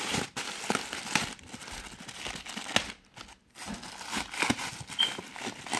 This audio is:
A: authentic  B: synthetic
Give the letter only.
A